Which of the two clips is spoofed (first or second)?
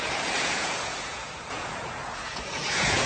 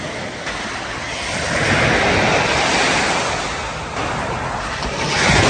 first